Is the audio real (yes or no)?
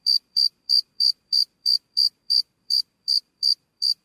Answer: no